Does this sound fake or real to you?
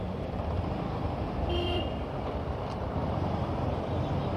fake